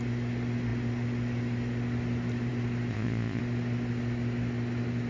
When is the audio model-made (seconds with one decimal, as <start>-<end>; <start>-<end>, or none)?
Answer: 2.9-3.4